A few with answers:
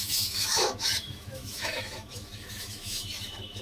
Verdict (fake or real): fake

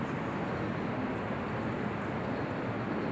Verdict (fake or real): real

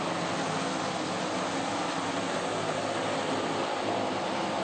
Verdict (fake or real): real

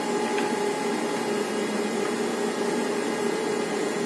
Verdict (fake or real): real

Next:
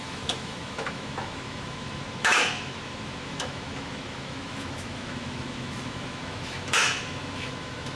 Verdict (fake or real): fake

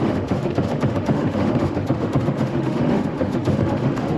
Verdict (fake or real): fake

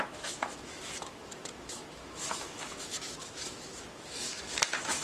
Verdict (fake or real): fake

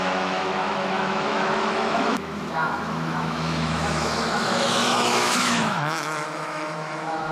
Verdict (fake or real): fake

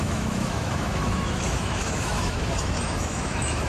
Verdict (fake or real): fake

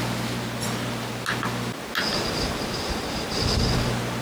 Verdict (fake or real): real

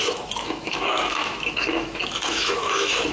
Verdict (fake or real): fake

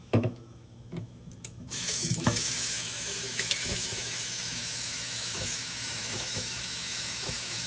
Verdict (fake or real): fake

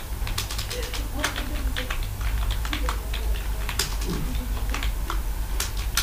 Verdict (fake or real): real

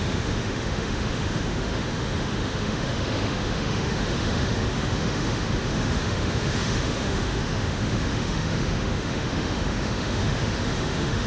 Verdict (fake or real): fake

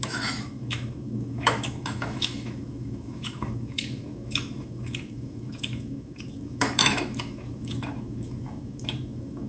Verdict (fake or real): fake